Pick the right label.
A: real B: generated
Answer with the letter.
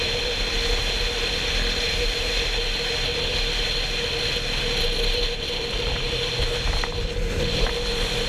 A